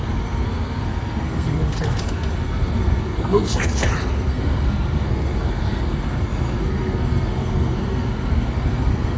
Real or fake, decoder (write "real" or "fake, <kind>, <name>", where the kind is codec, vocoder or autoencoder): fake, codec, SNAC